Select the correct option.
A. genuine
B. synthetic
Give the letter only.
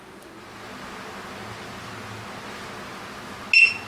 A